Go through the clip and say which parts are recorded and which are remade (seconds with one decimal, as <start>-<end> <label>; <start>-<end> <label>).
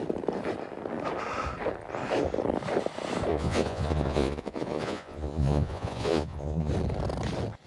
0.0-3.3 recorded; 3.3-6.7 remade; 6.7-7.7 recorded